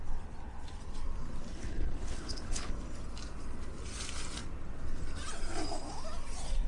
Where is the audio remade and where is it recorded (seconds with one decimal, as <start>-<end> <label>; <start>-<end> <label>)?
0.0-1.5 recorded; 1.5-2.7 remade; 2.7-6.7 recorded